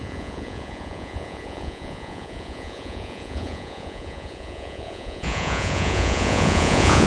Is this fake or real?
fake